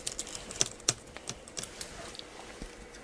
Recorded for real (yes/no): yes